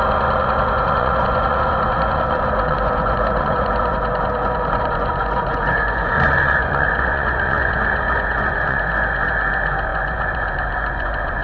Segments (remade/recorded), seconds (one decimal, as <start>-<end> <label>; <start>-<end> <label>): 0.0-11.4 remade